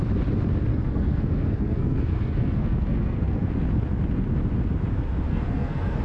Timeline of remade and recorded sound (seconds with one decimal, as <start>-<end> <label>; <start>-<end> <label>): 0.0-0.7 recorded; 0.7-3.5 remade; 3.5-5.3 recorded; 5.3-6.0 remade